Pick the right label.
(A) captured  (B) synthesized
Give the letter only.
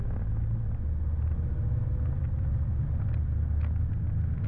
A